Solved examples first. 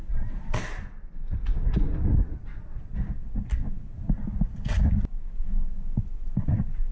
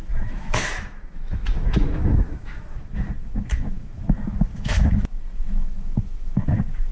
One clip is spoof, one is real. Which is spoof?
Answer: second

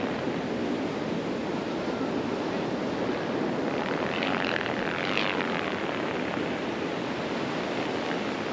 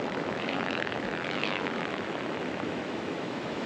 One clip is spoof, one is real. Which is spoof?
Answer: second